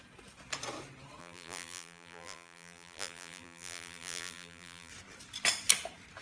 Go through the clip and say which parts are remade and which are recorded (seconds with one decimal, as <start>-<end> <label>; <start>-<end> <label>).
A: 0.0-1.2 recorded; 1.2-4.9 remade; 4.9-6.2 recorded